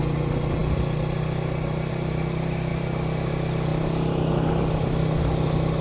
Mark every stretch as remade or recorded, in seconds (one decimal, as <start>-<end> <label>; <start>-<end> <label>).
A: 0.0-5.8 recorded